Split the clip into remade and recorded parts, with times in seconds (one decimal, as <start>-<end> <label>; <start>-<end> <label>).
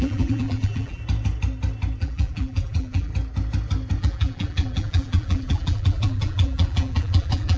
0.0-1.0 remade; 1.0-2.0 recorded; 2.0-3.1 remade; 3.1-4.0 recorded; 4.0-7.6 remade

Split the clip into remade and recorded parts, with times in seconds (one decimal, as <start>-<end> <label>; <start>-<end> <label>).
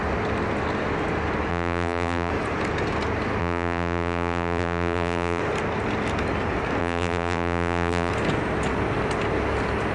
0.0-1.5 recorded; 1.5-2.3 remade; 2.3-3.4 recorded; 3.4-5.4 remade; 5.4-6.8 recorded; 6.8-8.1 remade; 8.1-9.9 recorded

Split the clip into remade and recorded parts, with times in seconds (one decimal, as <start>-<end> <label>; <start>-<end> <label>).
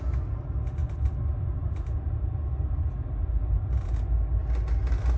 0.0-0.8 recorded; 0.8-3.9 remade; 3.9-5.2 recorded